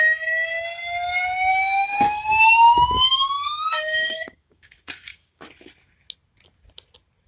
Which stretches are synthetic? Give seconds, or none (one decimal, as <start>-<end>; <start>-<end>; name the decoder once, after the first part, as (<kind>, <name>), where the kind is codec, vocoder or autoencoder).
1.5-5.4 (codec, DAC)